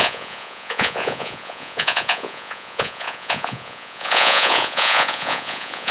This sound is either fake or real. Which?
fake